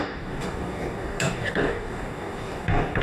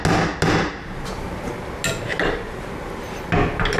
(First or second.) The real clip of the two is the second